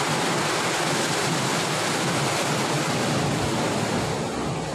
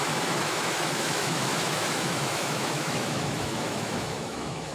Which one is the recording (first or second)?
first